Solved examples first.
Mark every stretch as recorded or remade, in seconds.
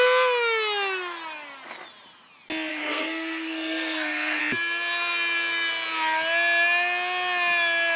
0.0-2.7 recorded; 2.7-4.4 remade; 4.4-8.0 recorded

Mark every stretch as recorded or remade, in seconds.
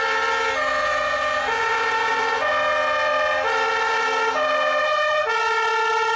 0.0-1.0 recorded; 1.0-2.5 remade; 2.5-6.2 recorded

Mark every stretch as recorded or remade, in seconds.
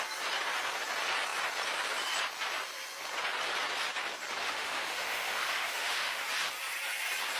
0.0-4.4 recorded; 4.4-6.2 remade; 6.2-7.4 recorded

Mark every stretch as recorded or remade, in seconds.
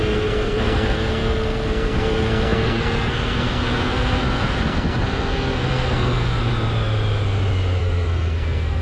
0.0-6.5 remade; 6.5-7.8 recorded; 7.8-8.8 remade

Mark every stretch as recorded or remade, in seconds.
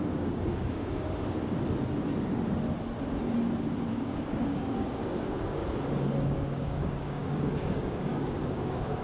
0.0-1.4 remade; 1.4-3.9 recorded; 3.9-5.6 remade; 5.6-6.2 recorded; 6.2-9.0 remade